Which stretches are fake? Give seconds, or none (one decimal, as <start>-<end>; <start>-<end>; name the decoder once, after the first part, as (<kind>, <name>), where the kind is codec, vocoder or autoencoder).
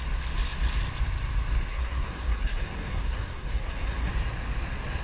1.7-4.1 (codec, SNAC)